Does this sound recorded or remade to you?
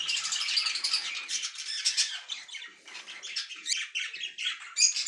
recorded